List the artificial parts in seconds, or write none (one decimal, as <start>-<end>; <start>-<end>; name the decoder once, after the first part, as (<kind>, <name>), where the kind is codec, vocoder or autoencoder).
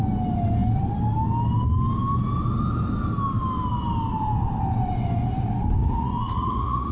5.8-6.9 (vocoder, Vocos)